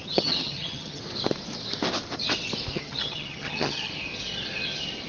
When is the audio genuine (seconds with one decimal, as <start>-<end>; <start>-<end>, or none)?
1.0-2.7; 3.9-5.1